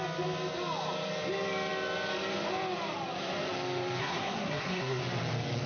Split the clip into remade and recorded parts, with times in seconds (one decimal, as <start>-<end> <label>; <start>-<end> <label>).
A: 0.0-4.0 recorded; 4.0-5.0 remade; 5.0-5.7 recorded